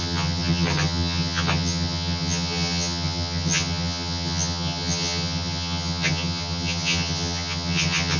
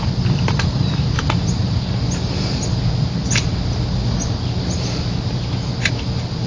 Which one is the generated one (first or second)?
first